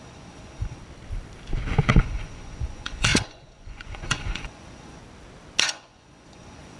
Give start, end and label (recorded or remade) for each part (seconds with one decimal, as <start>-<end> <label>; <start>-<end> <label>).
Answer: 0.0-0.8 remade; 0.8-1.9 recorded; 1.9-5.0 remade; 5.0-5.6 recorded; 5.6-6.8 remade